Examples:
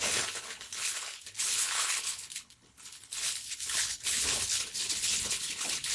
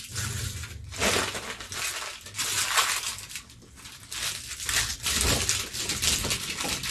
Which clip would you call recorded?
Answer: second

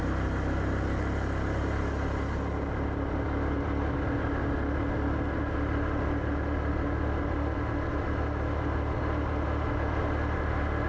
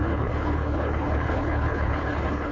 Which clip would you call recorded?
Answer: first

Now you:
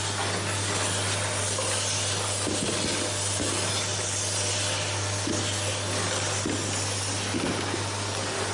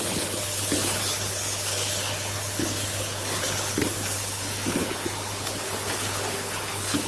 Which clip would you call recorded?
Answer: first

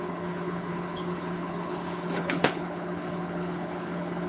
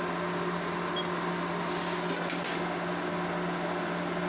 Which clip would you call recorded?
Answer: second